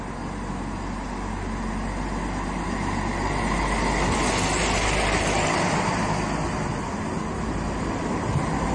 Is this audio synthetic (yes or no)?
no